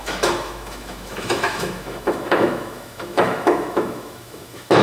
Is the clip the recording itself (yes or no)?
no